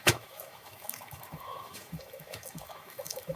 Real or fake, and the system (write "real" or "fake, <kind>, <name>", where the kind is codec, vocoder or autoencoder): fake, autoencoder, DAC-VAE